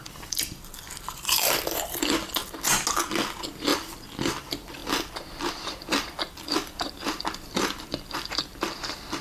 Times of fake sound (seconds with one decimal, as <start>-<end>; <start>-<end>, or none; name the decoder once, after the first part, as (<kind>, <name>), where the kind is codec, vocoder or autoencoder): 0.0-2.4 (vocoder, BigVGAN v2); 3.3-4.8; 5.5-9.2